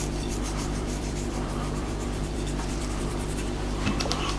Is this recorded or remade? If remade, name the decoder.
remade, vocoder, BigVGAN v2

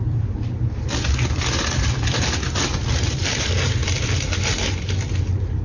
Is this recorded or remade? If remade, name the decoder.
recorded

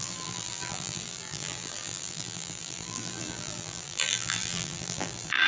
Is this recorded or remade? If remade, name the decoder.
remade, vocoder, BigVGAN v2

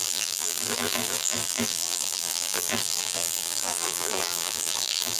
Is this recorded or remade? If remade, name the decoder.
remade, vocoder, BigVGAN v2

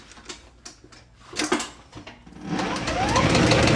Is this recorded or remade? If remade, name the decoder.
recorded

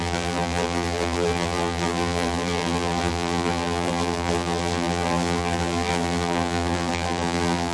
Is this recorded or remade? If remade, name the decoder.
remade, vocoder, BigVGAN v2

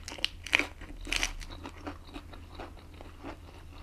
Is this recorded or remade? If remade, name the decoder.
recorded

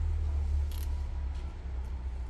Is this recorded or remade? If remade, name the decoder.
recorded